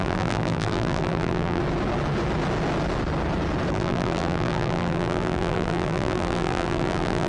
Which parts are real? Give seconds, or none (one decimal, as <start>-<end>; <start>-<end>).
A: 1.6-3.7